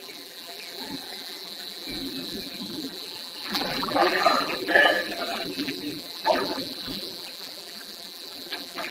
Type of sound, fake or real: fake